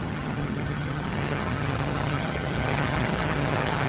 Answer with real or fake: fake